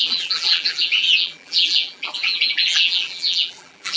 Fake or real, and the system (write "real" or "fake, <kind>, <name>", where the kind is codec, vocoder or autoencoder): fake, vocoder, BigVGAN v2